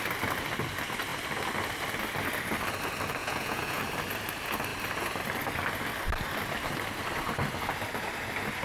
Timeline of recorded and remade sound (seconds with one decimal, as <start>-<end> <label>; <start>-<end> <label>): 0.0-3.2 recorded; 3.2-3.8 remade; 3.8-8.6 recorded

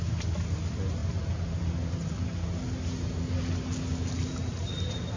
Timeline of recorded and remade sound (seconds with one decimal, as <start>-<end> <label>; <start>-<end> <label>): 0.0-5.2 recorded

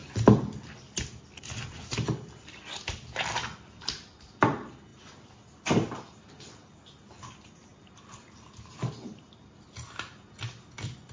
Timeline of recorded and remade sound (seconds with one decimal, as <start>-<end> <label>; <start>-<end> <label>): 0.0-7.7 recorded; 7.7-9.6 remade; 9.6-11.1 recorded